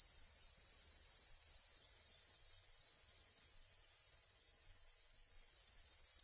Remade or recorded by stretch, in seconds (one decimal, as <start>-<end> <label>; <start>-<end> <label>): 0.0-1.8 recorded; 1.8-5.5 remade; 5.5-6.2 recorded